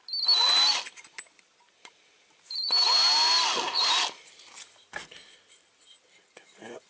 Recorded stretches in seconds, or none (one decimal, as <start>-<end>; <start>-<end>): 0.0-0.4; 4.5-6.9